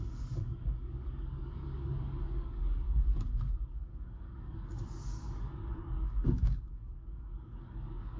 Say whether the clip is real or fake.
fake